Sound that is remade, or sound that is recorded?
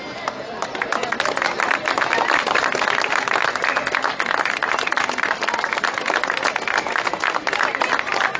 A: recorded